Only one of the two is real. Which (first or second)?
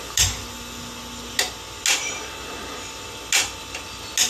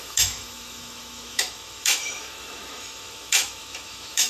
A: first